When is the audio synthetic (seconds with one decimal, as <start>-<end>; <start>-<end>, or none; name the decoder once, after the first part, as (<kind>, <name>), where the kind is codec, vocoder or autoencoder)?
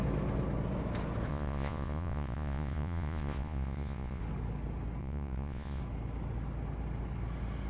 1.3-4.2 (vocoder, Vocos); 5.0-5.8